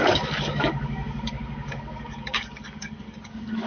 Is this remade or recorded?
remade